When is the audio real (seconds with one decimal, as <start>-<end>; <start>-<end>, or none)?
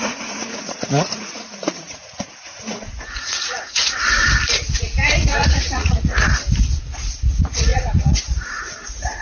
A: 4.2-4.8; 6.3-7.3